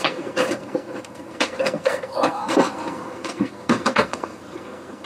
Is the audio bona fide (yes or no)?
no